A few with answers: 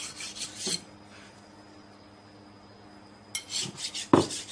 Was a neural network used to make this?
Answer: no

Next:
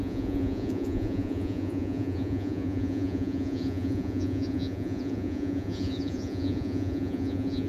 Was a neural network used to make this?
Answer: yes